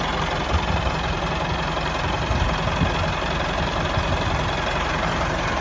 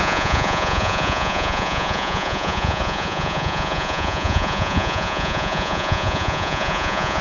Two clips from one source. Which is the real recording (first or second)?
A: first